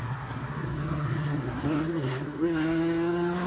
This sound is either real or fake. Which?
fake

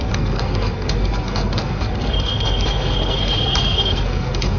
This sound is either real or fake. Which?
fake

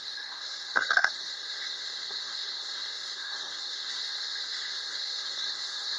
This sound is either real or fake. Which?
fake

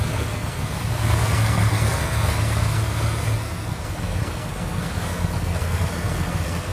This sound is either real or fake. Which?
fake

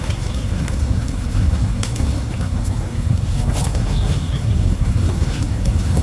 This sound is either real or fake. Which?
fake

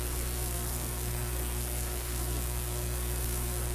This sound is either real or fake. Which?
fake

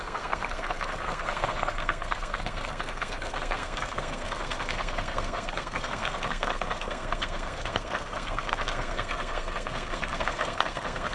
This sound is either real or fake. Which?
fake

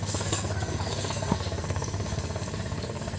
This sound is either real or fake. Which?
fake